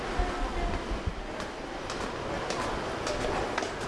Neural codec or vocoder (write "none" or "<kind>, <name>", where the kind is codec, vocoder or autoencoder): none